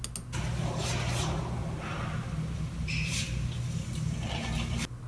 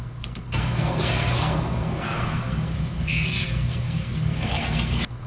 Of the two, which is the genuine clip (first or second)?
first